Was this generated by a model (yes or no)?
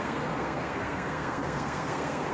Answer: yes